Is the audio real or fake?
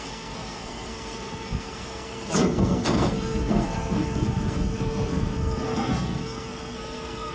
fake